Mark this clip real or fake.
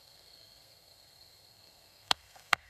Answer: fake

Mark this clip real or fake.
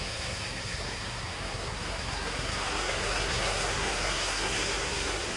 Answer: fake